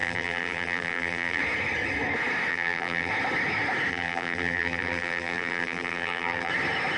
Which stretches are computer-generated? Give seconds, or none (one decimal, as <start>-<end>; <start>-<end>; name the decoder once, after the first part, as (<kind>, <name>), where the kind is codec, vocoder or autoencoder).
0.0-1.4 (vocoder, BigVGAN v2); 2.5-3.1; 3.9-6.5